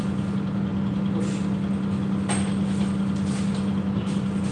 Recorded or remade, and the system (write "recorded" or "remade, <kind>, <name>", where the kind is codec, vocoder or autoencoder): recorded